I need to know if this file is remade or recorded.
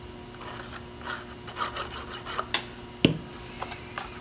recorded